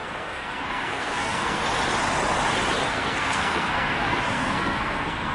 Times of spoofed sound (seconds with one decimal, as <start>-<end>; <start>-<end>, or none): 0.0-1.6; 2.9-5.3